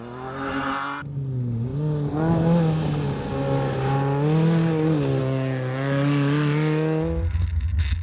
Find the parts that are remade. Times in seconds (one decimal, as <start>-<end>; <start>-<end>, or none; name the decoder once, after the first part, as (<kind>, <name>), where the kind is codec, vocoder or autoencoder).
none